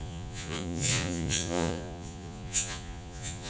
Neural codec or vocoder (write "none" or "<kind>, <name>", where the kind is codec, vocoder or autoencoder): vocoder, Vocos